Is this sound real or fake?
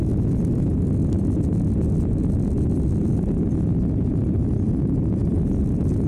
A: real